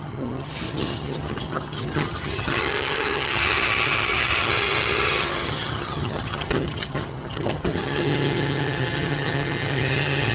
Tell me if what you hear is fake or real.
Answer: fake